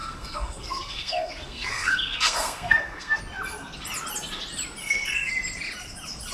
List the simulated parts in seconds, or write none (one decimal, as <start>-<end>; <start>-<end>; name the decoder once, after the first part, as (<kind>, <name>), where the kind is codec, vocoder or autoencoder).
0.0-3.2 (codec, SNAC); 4.8-5.3